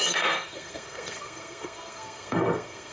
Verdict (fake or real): fake